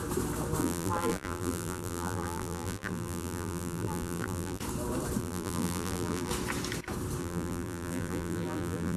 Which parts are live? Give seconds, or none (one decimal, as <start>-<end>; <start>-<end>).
0.0-0.6; 4.6-5.2; 6.3-7.2